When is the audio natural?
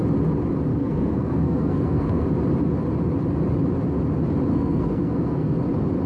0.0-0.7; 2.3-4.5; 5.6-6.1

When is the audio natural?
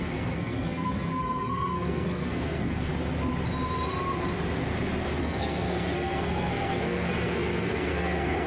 2.9-5.2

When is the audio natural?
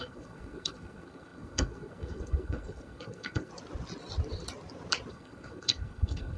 3.5-5.1